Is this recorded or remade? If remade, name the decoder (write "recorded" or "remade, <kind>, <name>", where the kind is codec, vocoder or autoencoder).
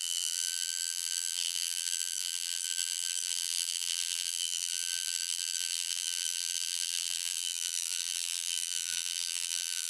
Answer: remade, vocoder, BigVGAN v2